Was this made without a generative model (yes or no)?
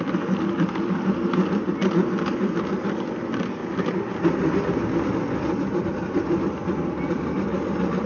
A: yes